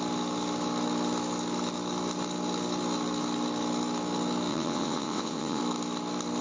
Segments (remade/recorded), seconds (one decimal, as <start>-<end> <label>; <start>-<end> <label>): 0.0-4.5 recorded; 4.5-5.6 remade; 5.6-6.4 recorded